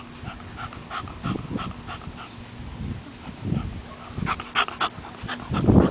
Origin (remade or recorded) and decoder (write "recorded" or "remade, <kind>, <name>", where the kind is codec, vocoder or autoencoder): recorded